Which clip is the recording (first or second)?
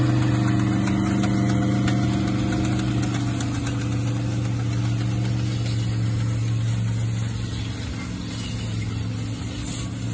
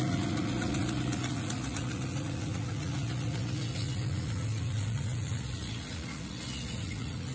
first